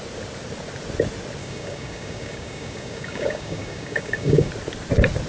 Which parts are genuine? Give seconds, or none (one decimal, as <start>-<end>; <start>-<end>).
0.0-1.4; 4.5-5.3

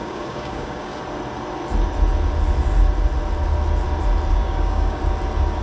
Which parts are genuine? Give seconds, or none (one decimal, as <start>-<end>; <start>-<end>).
0.9-4.3; 5.0-5.6

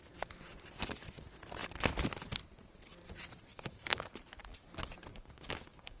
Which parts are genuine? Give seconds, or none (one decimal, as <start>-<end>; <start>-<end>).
0.0-3.5; 4.1-5.1

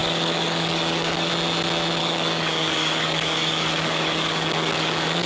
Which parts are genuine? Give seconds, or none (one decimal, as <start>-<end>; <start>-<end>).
1.3-2.0